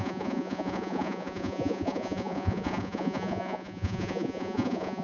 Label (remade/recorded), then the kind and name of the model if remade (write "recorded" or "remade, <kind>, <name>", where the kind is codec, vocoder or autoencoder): remade, vocoder, Vocos